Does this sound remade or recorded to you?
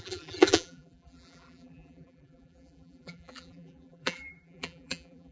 remade